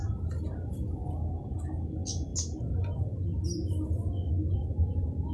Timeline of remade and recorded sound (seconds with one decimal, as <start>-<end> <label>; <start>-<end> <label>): 0.0-5.3 recorded